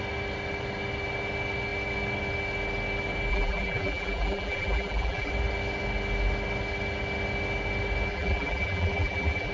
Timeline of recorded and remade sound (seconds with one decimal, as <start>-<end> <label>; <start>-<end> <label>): 0.0-3.3 recorded; 3.3-5.3 remade; 5.3-8.1 recorded; 8.1-9.5 remade